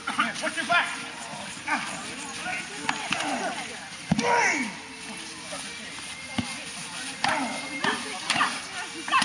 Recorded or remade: recorded